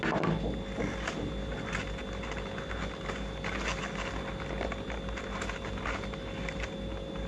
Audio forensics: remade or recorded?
recorded